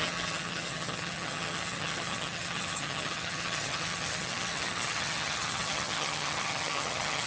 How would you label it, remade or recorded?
remade